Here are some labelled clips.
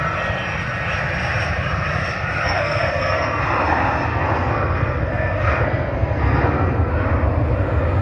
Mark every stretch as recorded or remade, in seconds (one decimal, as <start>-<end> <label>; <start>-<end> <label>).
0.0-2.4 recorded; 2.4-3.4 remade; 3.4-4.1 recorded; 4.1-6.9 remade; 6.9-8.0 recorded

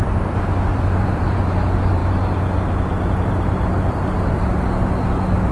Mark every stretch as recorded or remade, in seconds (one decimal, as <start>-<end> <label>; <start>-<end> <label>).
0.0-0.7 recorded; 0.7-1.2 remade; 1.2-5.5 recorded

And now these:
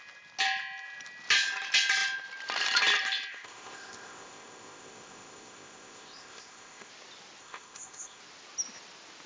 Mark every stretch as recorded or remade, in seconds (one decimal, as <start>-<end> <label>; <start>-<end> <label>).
0.0-3.3 recorded; 3.3-6.9 remade; 6.9-7.4 recorded; 7.4-8.2 remade; 8.2-9.3 recorded

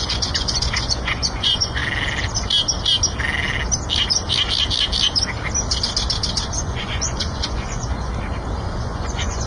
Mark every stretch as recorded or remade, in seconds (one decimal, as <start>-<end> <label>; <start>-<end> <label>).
0.0-1.8 remade; 1.8-6.6 recorded; 6.6-8.1 remade; 8.1-8.8 recorded; 8.8-9.5 remade

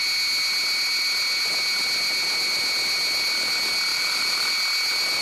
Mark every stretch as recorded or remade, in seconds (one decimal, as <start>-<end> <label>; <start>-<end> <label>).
0.0-3.9 recorded; 3.9-4.5 remade; 4.5-5.2 recorded